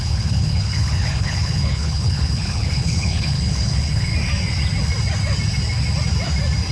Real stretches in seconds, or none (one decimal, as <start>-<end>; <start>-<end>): 4.1-6.7